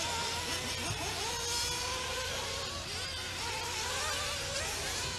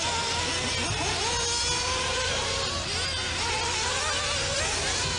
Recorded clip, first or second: second